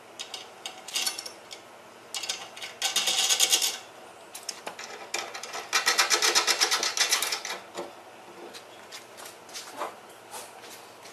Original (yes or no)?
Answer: yes